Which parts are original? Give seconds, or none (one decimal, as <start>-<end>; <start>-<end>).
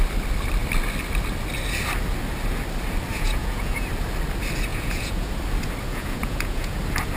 0.0-3.1; 3.9-4.7; 5.3-5.9; 6.8-7.2